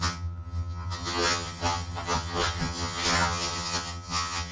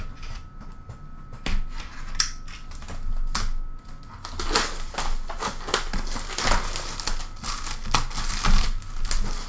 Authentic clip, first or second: second